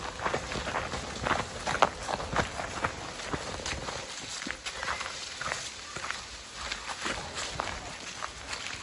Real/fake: real